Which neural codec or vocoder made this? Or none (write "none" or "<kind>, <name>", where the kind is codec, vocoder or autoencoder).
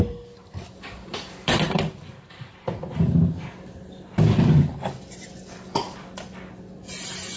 none